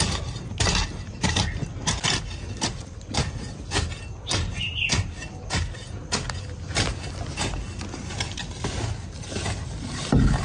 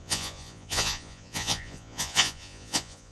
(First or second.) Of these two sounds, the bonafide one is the first